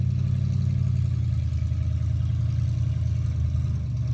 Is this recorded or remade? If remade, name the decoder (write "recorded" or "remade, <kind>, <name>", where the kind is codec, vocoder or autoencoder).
recorded